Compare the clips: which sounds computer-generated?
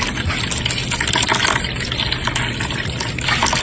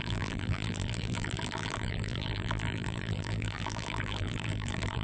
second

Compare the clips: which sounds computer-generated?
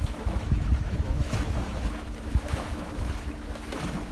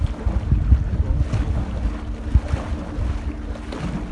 first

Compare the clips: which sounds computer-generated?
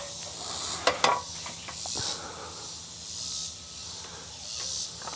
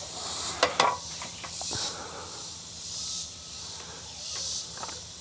second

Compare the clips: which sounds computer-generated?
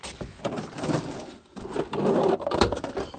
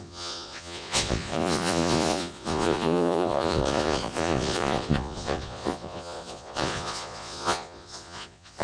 second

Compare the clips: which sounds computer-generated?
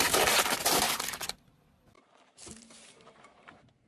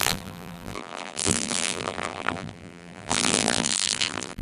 second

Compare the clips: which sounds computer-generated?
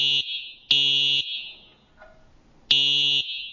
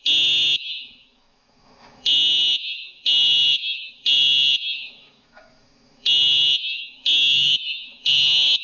second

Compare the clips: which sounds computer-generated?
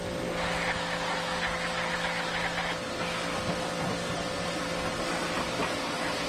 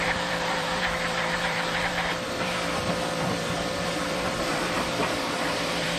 second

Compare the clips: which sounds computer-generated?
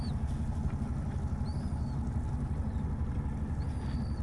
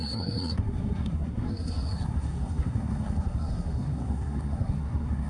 second